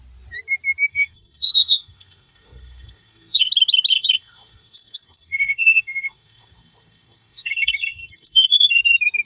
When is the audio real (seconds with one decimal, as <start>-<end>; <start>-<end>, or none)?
0.0-0.9; 3.5-3.9; 8.8-9.3